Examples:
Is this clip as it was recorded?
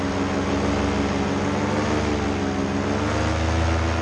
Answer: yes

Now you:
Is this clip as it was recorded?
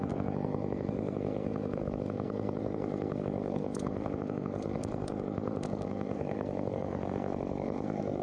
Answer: no